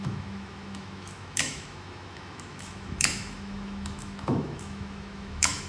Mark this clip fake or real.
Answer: fake